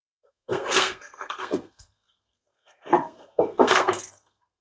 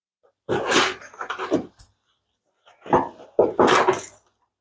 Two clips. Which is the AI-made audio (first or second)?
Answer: first